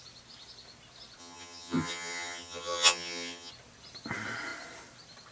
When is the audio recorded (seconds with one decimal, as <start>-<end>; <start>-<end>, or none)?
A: 0.0-1.2; 3.5-5.3